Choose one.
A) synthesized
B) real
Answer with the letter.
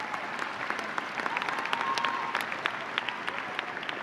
B